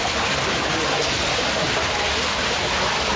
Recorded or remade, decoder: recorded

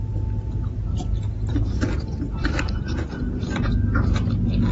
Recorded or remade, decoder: recorded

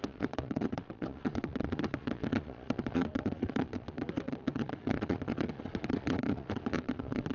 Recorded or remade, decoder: remade, vocoder, Vocos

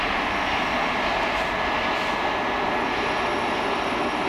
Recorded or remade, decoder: recorded